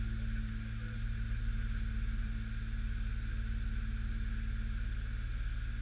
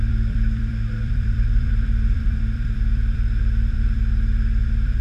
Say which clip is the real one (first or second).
first